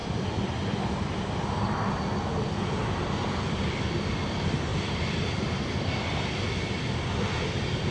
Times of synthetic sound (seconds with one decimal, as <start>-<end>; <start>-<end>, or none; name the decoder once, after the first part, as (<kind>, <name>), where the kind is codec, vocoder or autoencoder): 0.0-0.9 (vocoder, BigVGAN v2); 4.7-6.2